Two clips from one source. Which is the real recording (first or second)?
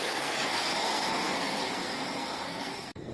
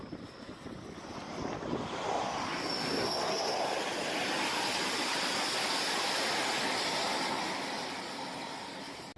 second